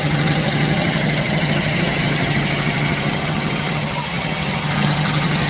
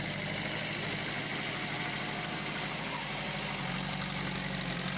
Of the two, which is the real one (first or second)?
second